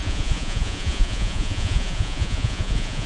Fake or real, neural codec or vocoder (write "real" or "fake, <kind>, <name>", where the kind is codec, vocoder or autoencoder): fake, vocoder, Vocos